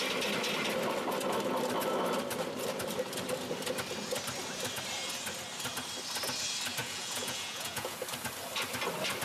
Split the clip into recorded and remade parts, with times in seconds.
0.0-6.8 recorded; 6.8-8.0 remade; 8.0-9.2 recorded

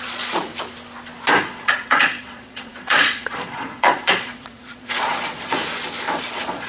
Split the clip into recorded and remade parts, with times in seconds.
0.0-0.5 remade; 0.5-1.4 recorded; 1.4-5.6 remade; 5.6-6.2 recorded; 6.2-6.7 remade

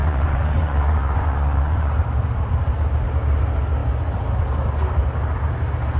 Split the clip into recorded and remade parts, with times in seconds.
0.0-1.9 remade; 1.9-6.0 recorded

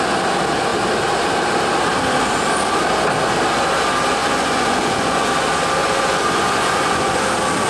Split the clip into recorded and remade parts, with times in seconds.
0.0-4.2 recorded; 4.2-5.3 remade; 5.3-5.8 recorded; 5.8-7.3 remade; 7.3-7.7 recorded

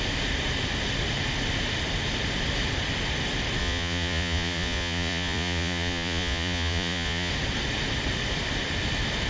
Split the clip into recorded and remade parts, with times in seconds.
0.0-3.6 recorded; 3.6-7.3 remade; 7.3-9.3 recorded

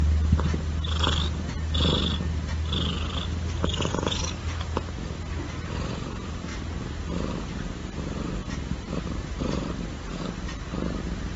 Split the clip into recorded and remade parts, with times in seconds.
0.0-11.4 recorded